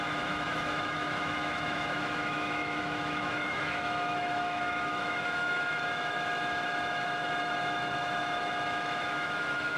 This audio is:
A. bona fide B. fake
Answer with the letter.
B